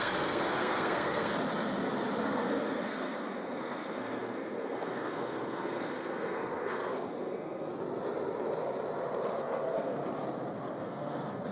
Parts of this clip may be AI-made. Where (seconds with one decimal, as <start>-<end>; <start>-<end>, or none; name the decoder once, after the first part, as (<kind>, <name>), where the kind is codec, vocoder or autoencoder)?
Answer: 0.0-1.3 (codec, SNAC); 2.2-7.7; 9.4-10.0; 10.8-11.5